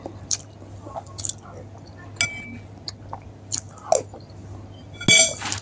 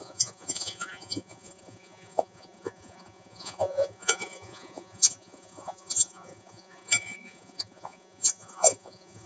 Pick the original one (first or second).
first